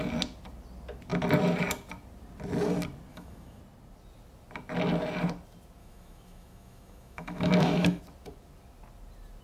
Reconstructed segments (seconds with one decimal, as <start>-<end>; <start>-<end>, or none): 3.1-3.6; 5.8-8.0